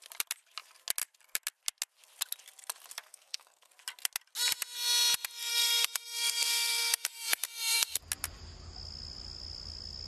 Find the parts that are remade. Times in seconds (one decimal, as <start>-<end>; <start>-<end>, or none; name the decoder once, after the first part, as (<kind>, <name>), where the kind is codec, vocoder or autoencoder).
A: 3.1-3.7 (codec, SNAC); 5.5-8.0